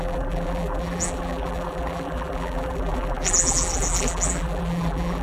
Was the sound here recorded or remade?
remade